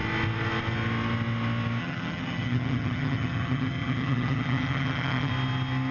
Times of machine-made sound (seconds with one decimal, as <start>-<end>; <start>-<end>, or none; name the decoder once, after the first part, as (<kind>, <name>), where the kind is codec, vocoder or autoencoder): 1.8-5.3 (vocoder, HiFi-GAN)